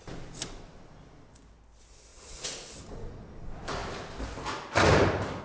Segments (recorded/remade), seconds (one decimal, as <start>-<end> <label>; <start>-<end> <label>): 0.0-2.1 recorded; 2.1-3.3 remade; 3.3-5.4 recorded